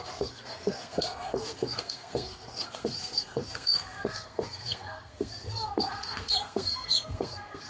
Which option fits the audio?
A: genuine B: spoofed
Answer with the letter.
B